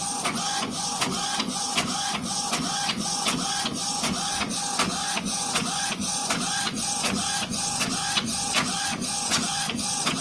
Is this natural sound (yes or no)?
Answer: no